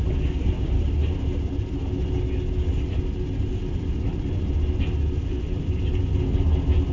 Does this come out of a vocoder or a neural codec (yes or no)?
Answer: no